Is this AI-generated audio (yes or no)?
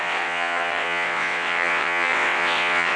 yes